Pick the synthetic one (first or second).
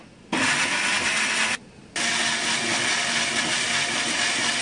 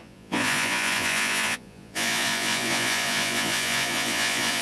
second